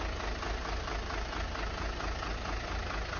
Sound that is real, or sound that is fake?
real